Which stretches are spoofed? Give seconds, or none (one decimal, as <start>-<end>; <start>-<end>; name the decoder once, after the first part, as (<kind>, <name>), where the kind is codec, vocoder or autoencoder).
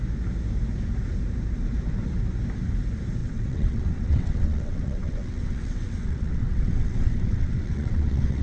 3.2-8.4 (vocoder, WaveNeXt)